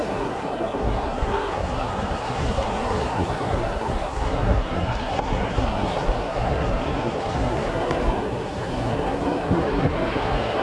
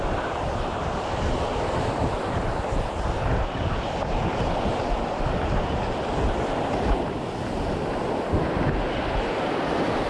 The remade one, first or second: first